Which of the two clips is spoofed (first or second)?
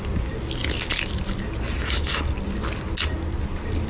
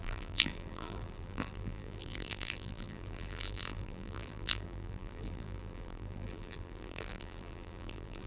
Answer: second